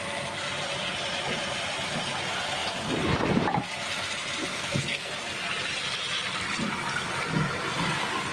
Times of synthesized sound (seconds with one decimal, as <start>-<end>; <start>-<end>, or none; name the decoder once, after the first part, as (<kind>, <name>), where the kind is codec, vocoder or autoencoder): 4.5-5.1 (codec, SNAC)